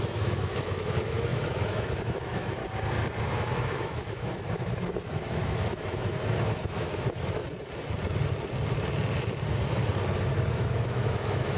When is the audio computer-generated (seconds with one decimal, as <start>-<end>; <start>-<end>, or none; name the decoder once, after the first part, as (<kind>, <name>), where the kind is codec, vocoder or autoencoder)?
0.0-2.6 (autoencoder, DAC-VAE); 3.2-7.4; 10.5-11.6